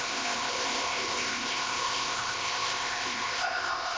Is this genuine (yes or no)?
no